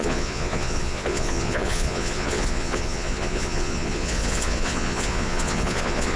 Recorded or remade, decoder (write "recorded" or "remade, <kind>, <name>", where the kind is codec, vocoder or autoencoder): remade, vocoder, Vocos